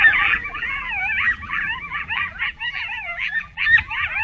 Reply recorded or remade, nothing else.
remade